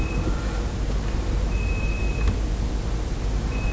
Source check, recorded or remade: recorded